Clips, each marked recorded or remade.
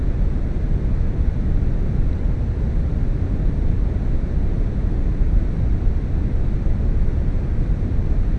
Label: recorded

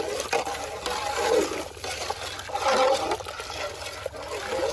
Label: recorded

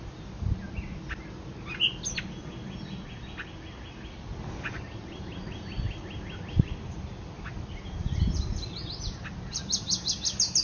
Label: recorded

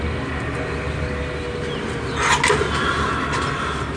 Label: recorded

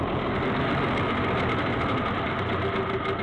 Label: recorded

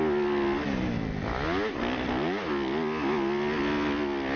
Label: recorded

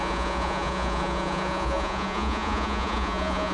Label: remade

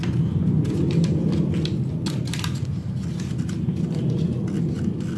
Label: recorded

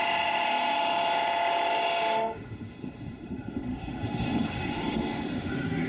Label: remade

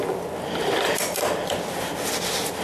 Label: recorded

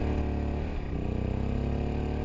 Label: recorded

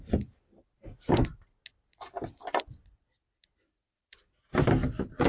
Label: recorded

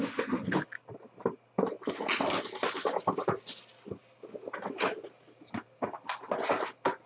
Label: recorded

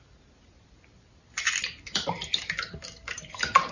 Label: recorded